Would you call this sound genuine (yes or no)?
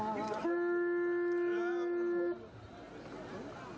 yes